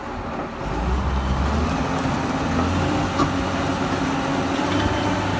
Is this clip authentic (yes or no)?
yes